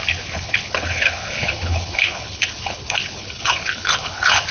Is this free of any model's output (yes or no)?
no